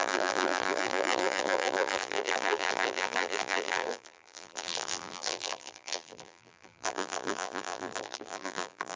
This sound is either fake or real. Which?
fake